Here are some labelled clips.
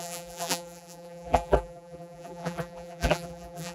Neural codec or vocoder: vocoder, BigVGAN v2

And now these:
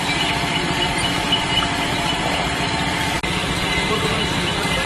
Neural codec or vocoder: none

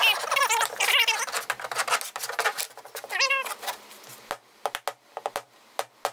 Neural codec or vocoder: none